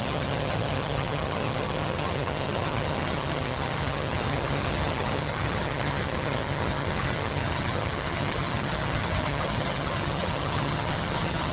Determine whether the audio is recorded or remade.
remade